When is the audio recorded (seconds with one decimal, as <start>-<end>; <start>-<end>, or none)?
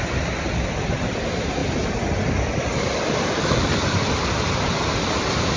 0.0-1.6; 4.9-5.6